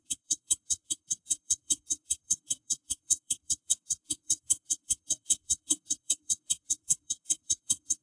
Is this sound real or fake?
fake